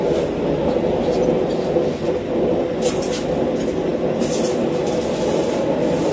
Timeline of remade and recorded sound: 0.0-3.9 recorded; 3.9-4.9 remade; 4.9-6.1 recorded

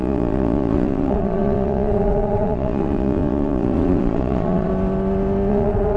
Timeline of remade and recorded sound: 0.0-4.7 remade; 4.7-5.5 recorded; 5.5-6.0 remade

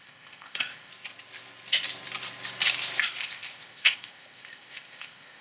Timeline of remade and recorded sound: 0.0-0.9 remade; 0.9-3.2 recorded; 3.2-5.4 remade

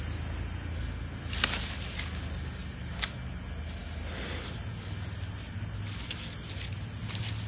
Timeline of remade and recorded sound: 0.0-7.5 recorded